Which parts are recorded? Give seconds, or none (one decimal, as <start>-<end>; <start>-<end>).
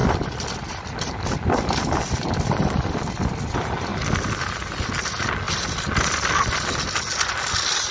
0.0-7.9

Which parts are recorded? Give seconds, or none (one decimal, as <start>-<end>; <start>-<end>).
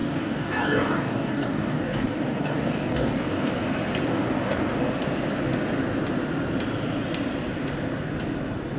3.5-4.1; 4.8-8.8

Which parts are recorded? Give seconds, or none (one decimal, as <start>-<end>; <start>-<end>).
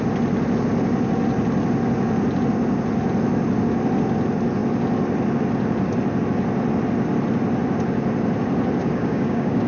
0.0-8.8